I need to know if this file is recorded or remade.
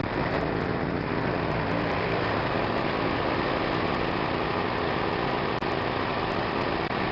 recorded